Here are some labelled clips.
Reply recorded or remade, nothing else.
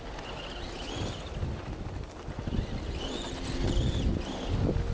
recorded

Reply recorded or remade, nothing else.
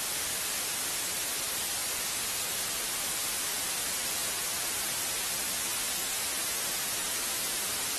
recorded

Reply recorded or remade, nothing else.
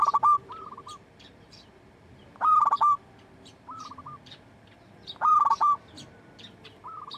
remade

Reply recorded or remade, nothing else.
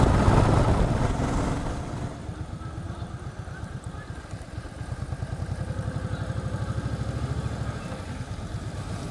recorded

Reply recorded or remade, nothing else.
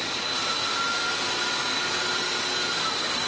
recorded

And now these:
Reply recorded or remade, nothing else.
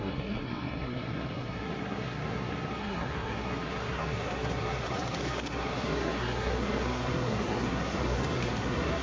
remade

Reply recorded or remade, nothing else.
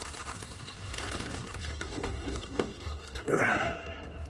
remade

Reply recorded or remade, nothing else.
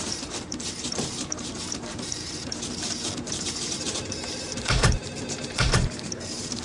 remade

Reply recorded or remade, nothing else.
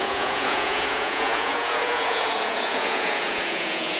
remade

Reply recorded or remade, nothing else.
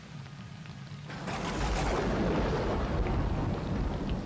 recorded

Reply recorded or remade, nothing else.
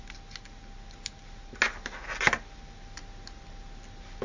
recorded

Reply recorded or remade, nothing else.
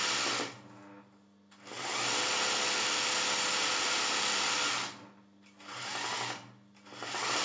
recorded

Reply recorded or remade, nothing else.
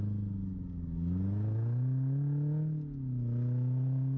recorded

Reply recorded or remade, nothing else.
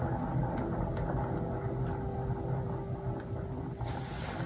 recorded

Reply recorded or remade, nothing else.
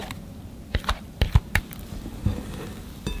remade